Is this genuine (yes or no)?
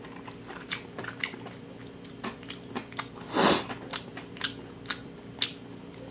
yes